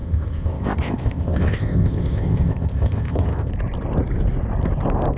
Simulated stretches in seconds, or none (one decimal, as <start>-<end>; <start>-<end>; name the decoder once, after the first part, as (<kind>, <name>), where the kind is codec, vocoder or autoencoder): 0.0-3.5 (codec, ZipCodec)